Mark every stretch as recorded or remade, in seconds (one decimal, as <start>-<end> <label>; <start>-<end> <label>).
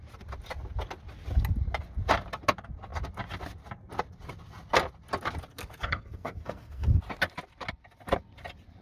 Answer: 0.0-5.5 recorded; 5.5-7.0 remade; 7.0-8.8 recorded